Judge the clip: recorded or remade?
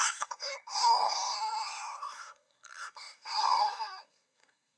remade